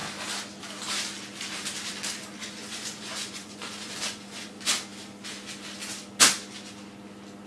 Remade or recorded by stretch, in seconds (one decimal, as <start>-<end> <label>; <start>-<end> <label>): 0.0-2.4 recorded; 2.4-4.5 remade; 4.5-7.5 recorded